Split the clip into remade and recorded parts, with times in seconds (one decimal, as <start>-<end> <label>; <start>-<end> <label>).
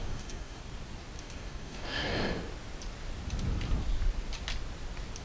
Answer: 0.0-0.6 remade; 0.6-1.2 recorded; 1.2-2.1 remade; 2.1-5.2 recorded